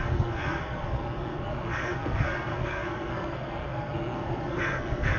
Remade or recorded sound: remade